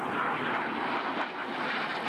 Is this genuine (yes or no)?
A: yes